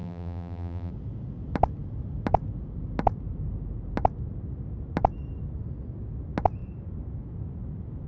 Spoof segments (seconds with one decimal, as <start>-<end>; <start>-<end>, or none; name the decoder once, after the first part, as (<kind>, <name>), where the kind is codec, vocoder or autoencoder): 0.0-0.9 (vocoder, BigVGAN v2)